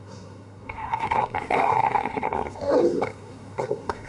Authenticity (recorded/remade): remade